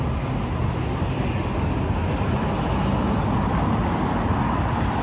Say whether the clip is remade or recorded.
recorded